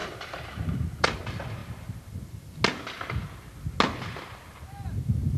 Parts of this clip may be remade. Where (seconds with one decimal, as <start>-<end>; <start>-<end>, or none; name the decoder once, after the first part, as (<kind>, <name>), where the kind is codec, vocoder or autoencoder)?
0.0-1.2 (vocoder, BigVGAN v2)